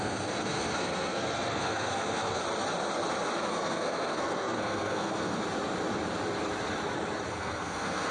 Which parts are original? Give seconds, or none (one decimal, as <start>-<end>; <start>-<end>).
2.4-3.5; 5.4-7.3